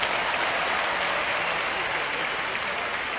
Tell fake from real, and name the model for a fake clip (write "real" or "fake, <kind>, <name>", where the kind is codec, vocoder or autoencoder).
real